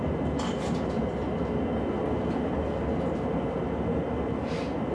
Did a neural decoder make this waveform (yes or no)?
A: no